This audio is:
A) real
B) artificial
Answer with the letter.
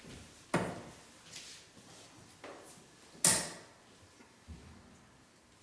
A